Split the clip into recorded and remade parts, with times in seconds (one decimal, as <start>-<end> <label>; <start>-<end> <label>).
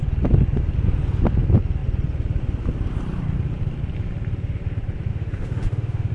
0.0-5.1 recorded; 5.1-6.1 remade